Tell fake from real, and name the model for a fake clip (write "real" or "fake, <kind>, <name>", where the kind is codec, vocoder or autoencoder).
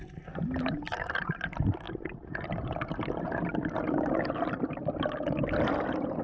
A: real